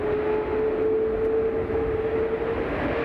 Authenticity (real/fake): real